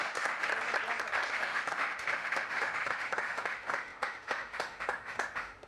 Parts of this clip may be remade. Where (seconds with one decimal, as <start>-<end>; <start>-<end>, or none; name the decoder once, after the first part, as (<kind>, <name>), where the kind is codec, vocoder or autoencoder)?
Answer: 0.0-0.5 (autoencoder, DAC-VAE); 1.3-5.7